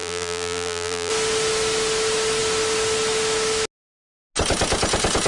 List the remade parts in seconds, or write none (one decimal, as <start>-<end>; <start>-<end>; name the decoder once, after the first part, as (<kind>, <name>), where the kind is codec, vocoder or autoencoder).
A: 0.0-1.1 (vocoder, BigVGAN v2)

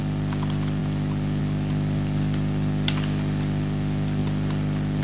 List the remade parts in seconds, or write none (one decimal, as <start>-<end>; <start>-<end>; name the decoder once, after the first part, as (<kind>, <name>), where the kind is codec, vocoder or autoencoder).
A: none

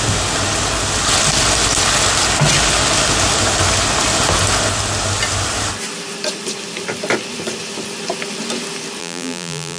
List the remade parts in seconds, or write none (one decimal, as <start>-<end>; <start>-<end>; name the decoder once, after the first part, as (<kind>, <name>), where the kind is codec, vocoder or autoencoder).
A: 9.0-9.8 (vocoder, BigVGAN v2)

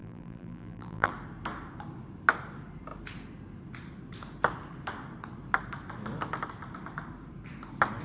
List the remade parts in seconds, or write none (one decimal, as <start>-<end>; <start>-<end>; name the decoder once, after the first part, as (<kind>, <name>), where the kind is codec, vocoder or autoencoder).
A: 0.0-1.1 (vocoder, BigVGAN v2)

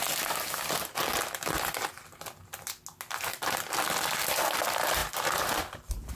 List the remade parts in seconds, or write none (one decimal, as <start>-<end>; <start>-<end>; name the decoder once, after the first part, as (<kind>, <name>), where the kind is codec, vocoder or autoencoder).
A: 5.0-6.1 (vocoder, BigVGAN v2)

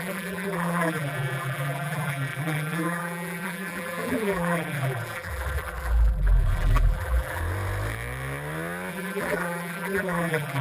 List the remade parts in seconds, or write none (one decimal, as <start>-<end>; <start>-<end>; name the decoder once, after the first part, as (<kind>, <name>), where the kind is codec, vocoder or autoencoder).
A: 0.0-7.4 (vocoder, BigVGAN v2); 8.9-10.6

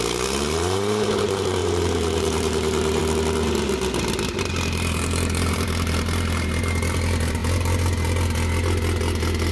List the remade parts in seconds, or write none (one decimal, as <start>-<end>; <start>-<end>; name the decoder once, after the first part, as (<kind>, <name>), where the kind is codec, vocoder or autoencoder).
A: 0.0-3.0 (vocoder, BigVGAN v2); 4.5-7.4

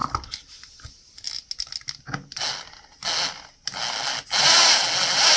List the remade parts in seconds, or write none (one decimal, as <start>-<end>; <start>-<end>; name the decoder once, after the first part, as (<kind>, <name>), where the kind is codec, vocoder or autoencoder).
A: none